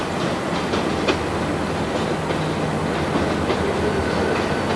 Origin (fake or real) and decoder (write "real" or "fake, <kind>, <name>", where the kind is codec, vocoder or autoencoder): real